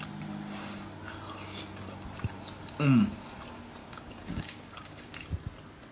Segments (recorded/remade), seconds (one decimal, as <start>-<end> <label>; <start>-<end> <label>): 0.0-3.8 recorded; 3.8-5.1 remade; 5.1-5.9 recorded